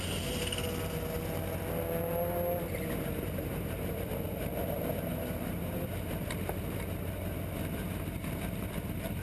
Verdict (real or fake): real